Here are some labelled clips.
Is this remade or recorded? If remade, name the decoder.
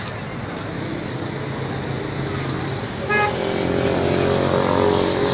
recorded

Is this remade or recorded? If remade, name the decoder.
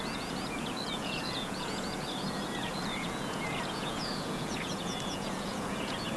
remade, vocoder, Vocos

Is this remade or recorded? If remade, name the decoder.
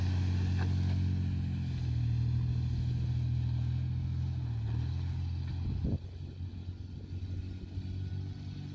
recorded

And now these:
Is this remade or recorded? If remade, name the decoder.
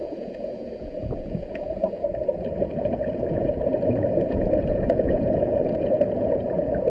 remade, vocoder, Vocos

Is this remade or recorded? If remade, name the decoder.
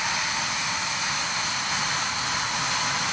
recorded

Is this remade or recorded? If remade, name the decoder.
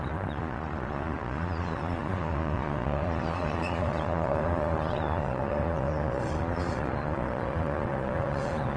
remade, vocoder, Vocos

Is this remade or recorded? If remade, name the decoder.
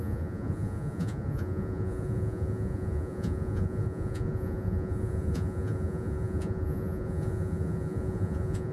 remade, vocoder, Vocos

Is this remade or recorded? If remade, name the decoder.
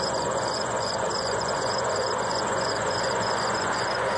remade, vocoder, Vocos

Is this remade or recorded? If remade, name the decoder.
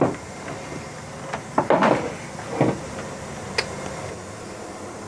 recorded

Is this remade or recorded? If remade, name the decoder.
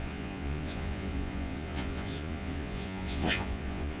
remade, vocoder, Vocos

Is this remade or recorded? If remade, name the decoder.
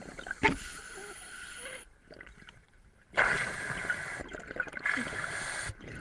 recorded